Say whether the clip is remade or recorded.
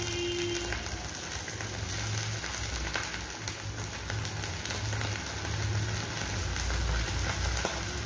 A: recorded